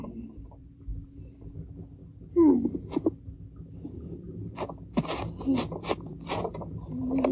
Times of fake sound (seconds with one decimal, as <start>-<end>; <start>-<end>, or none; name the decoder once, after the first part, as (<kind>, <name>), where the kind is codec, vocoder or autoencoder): none